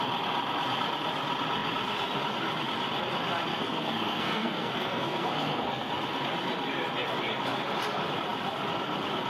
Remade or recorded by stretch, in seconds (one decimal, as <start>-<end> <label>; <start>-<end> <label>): 0.0-3.5 recorded; 3.5-5.9 remade; 5.9-9.3 recorded